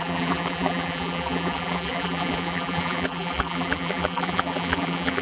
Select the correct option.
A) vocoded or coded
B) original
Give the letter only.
A